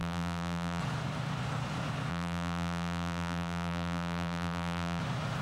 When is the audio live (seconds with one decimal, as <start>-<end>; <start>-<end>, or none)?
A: 0.8-2.1; 5.0-5.4